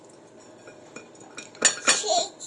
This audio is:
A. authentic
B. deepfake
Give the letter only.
A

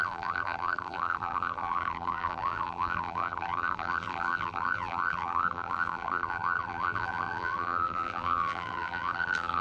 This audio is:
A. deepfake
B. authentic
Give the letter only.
A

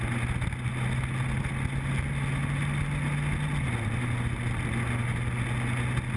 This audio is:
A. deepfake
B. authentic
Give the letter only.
B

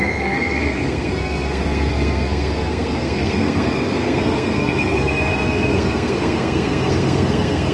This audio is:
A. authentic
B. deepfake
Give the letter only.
B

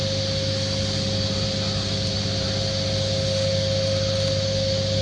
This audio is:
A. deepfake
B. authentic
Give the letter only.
B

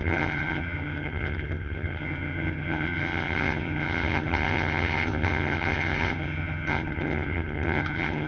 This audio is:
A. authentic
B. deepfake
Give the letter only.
B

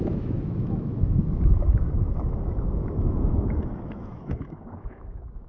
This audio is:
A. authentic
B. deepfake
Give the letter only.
B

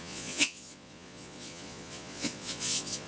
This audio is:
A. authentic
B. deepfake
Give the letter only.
B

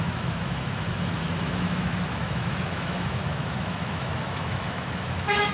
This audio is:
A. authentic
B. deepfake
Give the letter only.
B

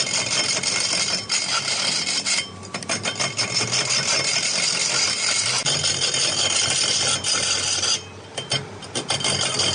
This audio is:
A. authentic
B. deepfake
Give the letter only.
A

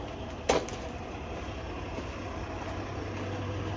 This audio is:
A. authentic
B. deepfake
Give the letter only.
A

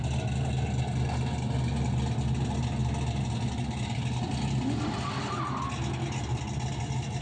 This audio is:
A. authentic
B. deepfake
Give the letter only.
A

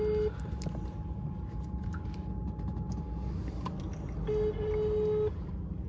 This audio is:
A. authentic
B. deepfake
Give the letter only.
A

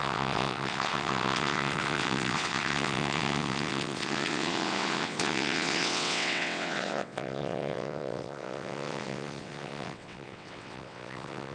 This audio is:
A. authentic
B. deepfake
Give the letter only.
B